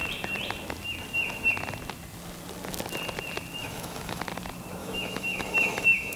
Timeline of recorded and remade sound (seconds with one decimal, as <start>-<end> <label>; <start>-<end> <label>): 0.0-3.6 recorded; 3.6-4.2 remade; 4.2-4.8 recorded; 4.8-6.2 remade